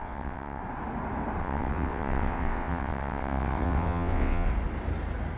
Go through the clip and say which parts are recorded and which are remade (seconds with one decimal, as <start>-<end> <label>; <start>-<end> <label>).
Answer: 0.0-0.6 remade; 0.6-1.4 recorded; 1.4-4.5 remade; 4.5-5.4 recorded